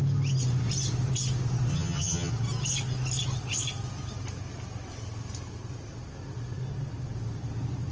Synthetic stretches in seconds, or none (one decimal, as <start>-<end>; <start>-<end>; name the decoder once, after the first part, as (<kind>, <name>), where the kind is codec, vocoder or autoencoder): 1.7-2.3 (vocoder, HiFi-GAN)